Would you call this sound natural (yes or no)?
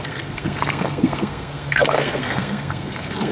no